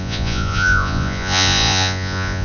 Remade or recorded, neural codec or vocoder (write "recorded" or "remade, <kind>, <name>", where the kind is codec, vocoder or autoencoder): remade, vocoder, Vocos